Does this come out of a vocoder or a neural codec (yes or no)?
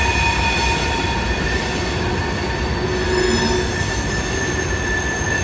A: no